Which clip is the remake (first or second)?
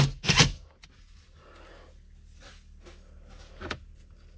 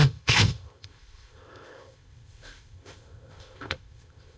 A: second